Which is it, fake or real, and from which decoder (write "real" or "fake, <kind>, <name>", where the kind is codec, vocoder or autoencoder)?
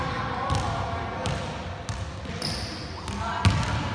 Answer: real